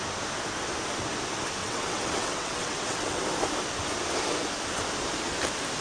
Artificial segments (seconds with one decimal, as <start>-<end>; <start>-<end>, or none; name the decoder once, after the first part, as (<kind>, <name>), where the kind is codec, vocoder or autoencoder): 1.6-3.2 (vocoder, WaveNeXt)